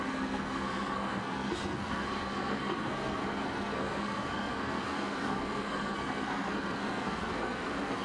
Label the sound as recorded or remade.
remade